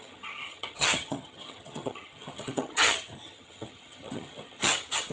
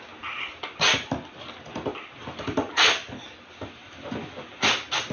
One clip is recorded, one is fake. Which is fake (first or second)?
first